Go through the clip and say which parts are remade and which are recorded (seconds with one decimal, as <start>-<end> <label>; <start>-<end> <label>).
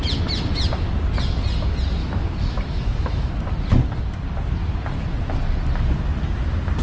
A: 0.0-2.0 recorded; 2.0-3.3 remade; 3.3-6.8 recorded